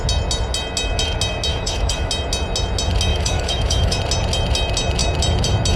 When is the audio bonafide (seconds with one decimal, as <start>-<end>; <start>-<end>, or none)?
0.0-1.5; 2.1-3.1; 4.0-5.8